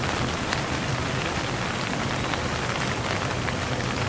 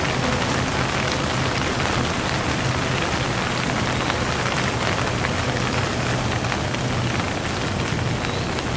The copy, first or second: first